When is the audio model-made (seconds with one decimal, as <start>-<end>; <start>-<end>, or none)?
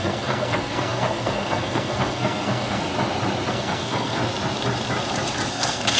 0.0-2.9; 3.5-4.2; 5.5-6.0